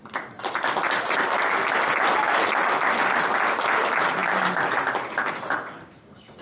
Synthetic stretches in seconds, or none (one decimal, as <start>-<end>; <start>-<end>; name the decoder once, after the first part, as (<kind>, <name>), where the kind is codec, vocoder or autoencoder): none